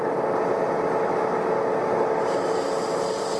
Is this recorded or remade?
recorded